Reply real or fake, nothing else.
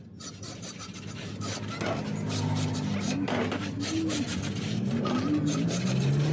real